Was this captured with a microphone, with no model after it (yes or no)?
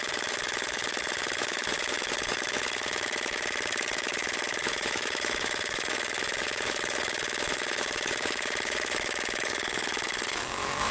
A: no